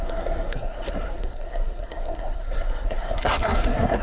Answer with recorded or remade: remade